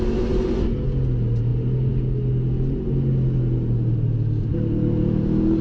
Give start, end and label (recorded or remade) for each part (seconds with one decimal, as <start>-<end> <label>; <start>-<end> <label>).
0.0-5.6 recorded